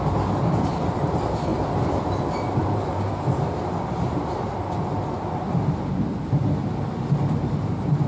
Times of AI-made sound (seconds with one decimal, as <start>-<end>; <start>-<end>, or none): none